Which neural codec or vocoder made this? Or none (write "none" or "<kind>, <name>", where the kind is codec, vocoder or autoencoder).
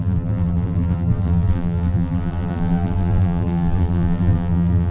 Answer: vocoder, BigVGAN v2